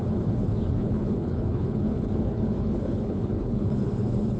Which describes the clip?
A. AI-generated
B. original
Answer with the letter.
A